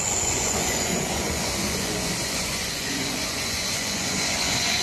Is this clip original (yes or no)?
no